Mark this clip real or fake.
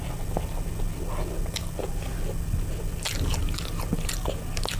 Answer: real